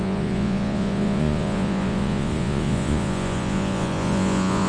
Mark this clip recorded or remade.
remade